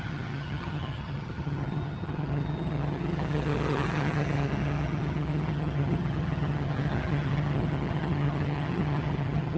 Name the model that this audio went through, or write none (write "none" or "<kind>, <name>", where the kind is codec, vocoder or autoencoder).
vocoder, HiFi-GAN